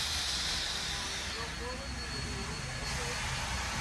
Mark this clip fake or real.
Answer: real